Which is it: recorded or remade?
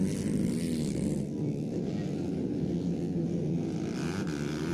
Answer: recorded